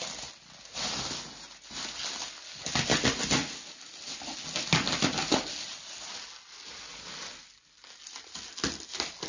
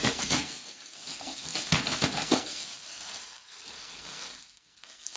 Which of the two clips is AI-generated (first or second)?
second